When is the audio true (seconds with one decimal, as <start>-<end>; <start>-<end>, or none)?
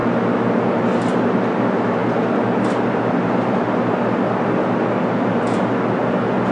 0.0-6.5